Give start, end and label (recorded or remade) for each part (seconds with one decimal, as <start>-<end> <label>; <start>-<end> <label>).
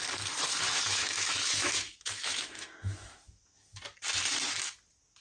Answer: 0.0-0.7 recorded; 0.7-3.8 remade; 3.8-5.2 recorded